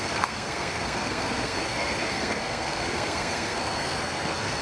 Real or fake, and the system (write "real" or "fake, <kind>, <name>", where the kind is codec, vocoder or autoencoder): fake, codec, SNAC